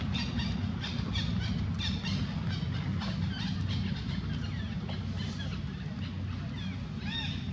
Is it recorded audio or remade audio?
recorded